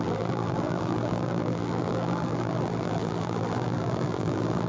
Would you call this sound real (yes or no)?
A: no